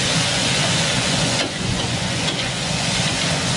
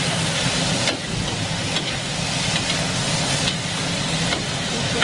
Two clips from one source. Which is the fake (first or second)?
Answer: first